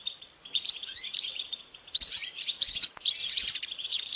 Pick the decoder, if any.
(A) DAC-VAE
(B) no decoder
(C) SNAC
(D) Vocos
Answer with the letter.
D